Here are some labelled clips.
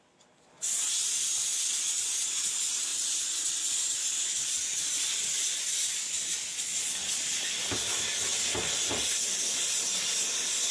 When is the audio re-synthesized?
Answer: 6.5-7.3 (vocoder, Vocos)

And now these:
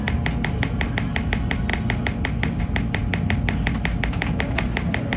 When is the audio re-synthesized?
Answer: none

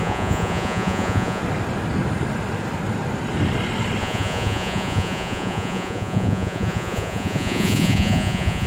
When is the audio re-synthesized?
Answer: 0.0-1.4 (vocoder, Vocos); 4.0-8.7

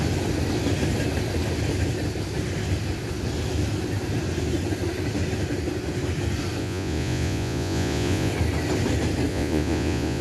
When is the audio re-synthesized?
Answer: 6.6-8.3 (vocoder, Vocos); 9.3-10.2

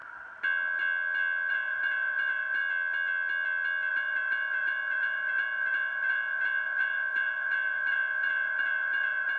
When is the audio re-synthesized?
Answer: 1.5-2.6 (vocoder, Vocos); 3.9-9.4

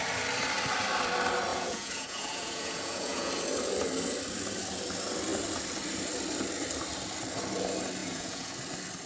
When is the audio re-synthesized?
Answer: 1.5-3.3 (vocoder, Vocos); 8.0-8.5